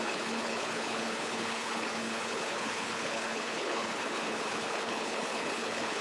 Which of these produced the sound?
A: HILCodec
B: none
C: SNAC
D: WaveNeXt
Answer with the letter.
A